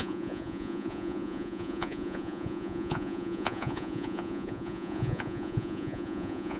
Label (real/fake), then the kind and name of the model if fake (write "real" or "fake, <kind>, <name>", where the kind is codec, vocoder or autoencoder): fake, vocoder, Vocos